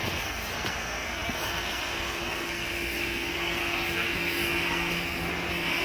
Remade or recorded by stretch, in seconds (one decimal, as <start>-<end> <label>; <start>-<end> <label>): 0.0-5.8 remade